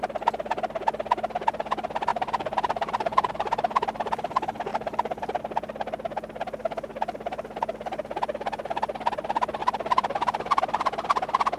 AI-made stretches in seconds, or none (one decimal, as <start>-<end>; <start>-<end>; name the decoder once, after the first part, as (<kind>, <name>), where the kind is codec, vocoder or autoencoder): 2.1-3.3 (vocoder, BigVGAN v2); 4.7-5.4; 9.6-10.6